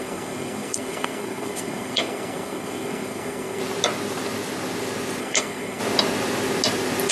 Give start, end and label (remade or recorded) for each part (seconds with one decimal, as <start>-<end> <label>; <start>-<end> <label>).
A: 0.0-3.6 remade; 3.6-5.2 recorded; 5.2-5.8 remade; 5.8-7.1 recorded